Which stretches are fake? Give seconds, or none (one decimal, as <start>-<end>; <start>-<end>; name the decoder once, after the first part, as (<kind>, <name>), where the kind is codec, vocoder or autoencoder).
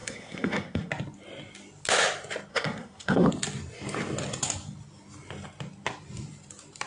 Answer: 0.0-0.9 (codec, SNAC); 2.5-3.3